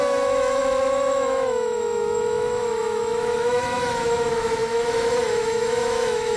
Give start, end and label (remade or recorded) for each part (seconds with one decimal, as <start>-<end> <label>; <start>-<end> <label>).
0.0-6.4 remade